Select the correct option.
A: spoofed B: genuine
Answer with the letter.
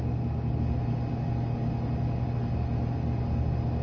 B